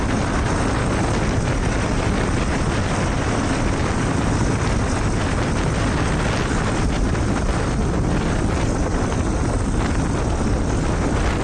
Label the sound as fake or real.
real